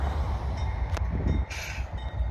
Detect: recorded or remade recorded